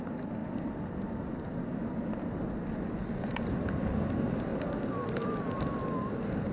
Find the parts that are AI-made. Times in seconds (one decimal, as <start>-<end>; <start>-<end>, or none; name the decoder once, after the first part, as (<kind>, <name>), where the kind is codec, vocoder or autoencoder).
none